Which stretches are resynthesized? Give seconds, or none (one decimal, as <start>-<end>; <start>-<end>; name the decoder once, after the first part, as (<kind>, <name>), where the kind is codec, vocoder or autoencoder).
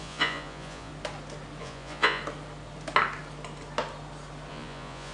0.0-0.9 (vocoder, Vocos); 1.6-2.2; 4.5-5.1